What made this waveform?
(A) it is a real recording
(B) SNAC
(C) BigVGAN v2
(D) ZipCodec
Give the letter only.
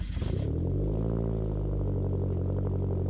A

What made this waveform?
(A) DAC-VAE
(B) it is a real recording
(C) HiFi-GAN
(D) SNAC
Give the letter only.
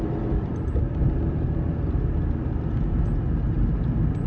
B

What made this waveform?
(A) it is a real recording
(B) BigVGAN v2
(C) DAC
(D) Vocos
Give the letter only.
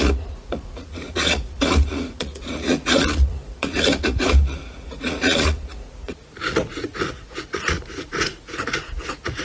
D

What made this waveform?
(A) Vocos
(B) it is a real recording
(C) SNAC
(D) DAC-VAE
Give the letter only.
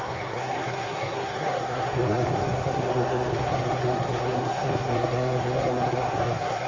C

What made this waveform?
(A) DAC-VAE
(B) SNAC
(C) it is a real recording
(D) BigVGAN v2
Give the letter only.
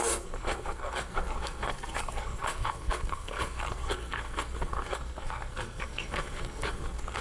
B